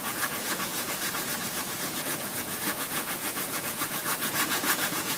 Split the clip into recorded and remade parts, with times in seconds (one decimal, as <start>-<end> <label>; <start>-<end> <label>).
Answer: 0.0-5.2 remade